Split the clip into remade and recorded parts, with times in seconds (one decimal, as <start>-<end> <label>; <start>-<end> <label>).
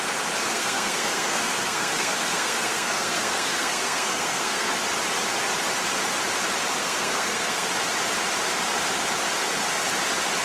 0.0-0.5 recorded; 0.5-4.7 remade; 4.7-6.8 recorded; 6.8-7.7 remade; 7.7-10.4 recorded